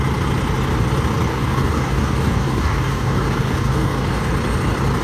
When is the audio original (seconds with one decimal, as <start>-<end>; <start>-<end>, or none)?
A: 0.0-1.3; 4.3-5.0